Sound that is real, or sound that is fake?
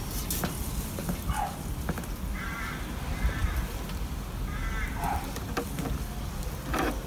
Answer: real